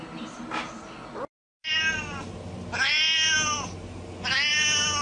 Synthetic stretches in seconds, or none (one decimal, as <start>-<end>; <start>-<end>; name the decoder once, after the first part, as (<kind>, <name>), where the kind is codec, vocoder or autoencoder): none